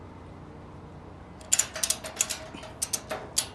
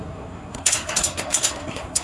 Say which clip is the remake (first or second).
second